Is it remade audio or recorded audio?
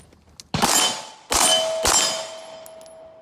recorded